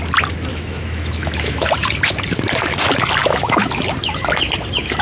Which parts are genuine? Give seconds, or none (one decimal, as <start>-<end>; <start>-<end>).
0.0-0.5; 1.7-3.2; 3.7-5.0